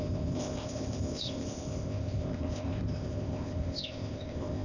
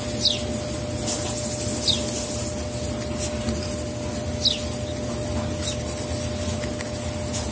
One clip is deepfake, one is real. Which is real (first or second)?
second